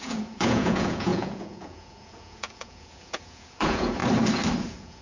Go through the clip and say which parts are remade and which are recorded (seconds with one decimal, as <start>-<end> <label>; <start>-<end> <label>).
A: 0.0-4.0 remade; 4.0-4.6 recorded; 4.6-5.0 remade